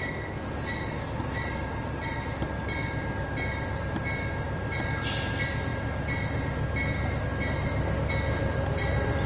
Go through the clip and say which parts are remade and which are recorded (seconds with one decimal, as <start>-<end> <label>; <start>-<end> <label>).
0.0-8.4 recorded; 8.4-9.3 remade